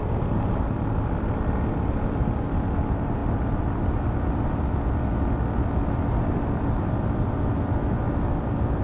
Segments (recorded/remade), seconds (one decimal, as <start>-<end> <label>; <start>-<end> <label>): 0.0-8.8 recorded